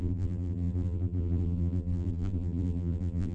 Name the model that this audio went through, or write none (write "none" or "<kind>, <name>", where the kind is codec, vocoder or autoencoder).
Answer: vocoder, BigVGAN v2